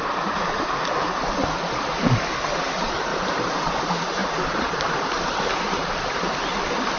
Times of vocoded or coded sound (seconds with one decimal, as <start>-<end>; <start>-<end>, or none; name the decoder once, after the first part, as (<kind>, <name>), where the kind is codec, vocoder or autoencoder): 3.1-3.7 (vocoder, BigVGAN v2); 4.2-5.3